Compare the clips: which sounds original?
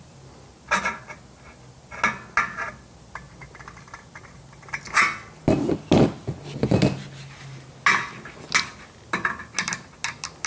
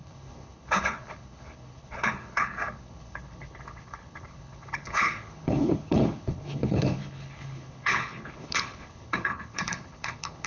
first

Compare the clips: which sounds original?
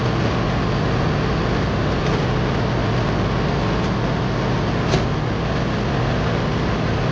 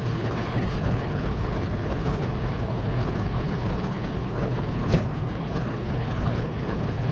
first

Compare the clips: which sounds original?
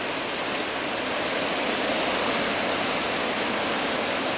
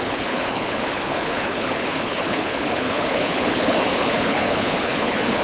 first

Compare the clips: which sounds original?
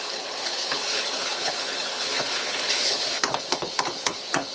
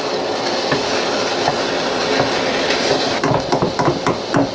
second